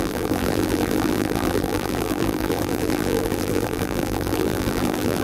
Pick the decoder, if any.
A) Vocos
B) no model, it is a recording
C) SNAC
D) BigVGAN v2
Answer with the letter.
D